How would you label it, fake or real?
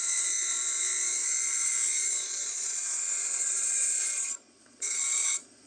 fake